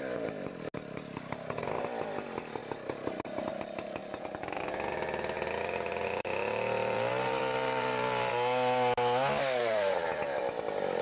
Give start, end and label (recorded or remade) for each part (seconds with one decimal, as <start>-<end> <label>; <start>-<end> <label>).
0.0-4.0 recorded; 4.0-8.3 remade; 8.3-9.6 recorded; 9.6-10.4 remade; 10.4-11.0 recorded